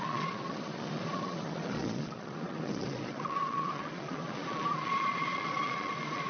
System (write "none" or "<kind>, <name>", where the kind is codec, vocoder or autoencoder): vocoder, Vocos